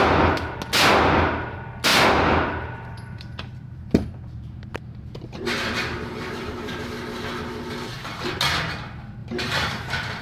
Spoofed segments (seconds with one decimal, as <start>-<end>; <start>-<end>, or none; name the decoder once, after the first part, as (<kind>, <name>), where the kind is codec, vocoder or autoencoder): 1.9-6.9 (vocoder, BigVGAN v2); 9.2-10.2